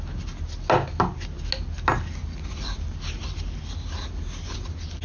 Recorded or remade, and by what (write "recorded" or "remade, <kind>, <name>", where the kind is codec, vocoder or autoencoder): recorded